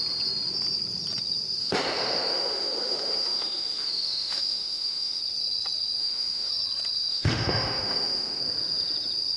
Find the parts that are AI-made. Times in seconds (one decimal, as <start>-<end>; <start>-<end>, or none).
1.6-5.2; 6.0-6.5; 7.1-8.4